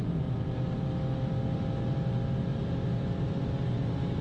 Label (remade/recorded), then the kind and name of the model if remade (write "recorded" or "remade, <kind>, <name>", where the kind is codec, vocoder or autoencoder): recorded